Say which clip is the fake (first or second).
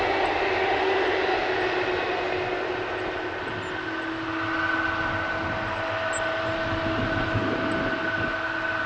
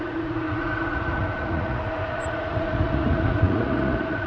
second